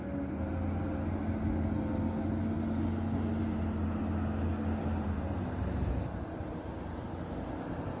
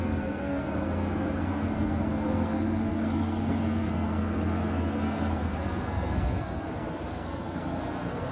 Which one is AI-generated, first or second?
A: second